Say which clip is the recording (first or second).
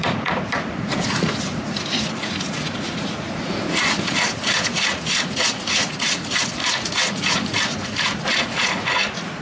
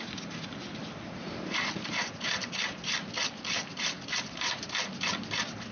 second